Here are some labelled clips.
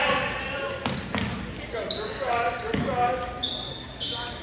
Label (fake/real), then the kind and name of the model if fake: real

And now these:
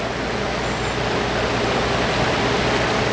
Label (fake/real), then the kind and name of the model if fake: real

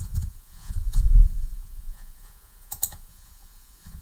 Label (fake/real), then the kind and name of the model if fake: fake, vocoder, Vocos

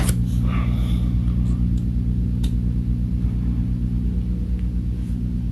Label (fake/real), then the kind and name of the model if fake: real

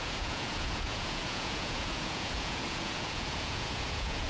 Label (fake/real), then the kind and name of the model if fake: fake, vocoder, Vocos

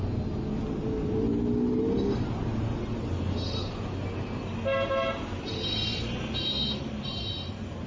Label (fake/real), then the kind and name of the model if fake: real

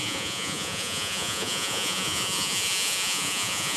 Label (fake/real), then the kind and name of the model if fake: fake, vocoder, Vocos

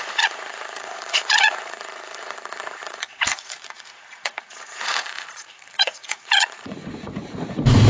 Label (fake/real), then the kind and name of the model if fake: fake, vocoder, Vocos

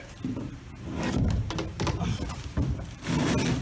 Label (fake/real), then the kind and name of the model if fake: real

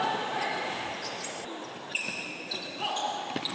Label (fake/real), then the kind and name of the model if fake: real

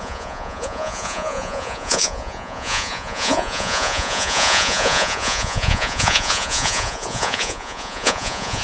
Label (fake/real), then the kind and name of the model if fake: fake, vocoder, Vocos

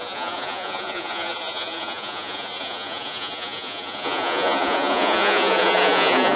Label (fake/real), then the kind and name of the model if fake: fake, vocoder, Vocos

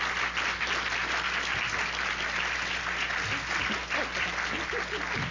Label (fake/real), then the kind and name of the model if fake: real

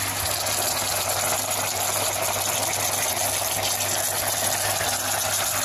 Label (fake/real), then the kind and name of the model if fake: real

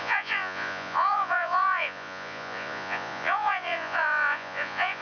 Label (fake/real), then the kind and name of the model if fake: fake, vocoder, Vocos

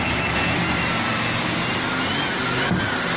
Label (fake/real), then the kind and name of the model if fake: real